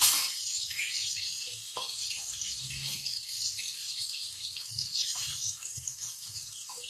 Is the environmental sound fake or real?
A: fake